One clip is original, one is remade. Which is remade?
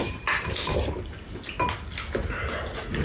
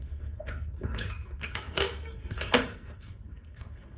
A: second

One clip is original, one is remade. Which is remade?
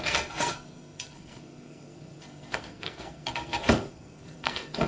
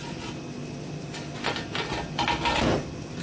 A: first